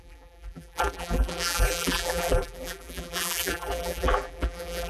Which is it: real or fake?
fake